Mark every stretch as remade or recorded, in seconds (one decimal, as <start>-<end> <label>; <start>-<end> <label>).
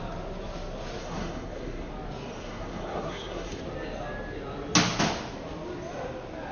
0.0-1.0 recorded; 1.0-1.9 remade; 1.9-2.4 recorded; 2.4-3.6 remade; 3.6-6.5 recorded